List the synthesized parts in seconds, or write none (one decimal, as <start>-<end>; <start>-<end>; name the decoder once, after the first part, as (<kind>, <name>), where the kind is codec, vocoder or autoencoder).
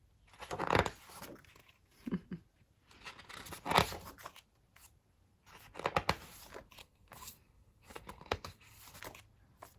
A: 6.8-8.8 (codec, SNAC)